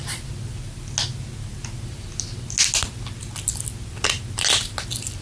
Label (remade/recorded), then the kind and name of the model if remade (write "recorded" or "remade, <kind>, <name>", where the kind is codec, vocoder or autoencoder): recorded